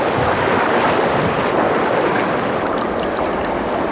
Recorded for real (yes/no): yes